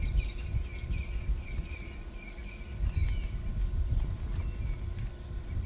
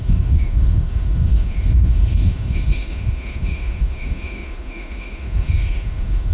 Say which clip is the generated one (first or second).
second